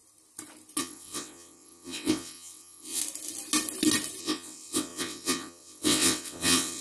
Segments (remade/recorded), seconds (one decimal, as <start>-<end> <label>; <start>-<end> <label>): 0.0-0.8 recorded; 0.8-3.0 remade; 3.0-4.2 recorded; 4.2-6.8 remade